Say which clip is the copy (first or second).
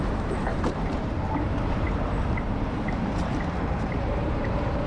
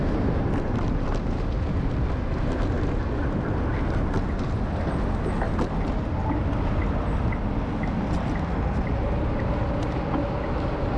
first